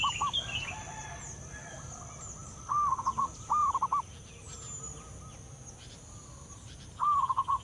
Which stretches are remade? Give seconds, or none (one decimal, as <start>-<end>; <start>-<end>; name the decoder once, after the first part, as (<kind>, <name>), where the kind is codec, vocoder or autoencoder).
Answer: none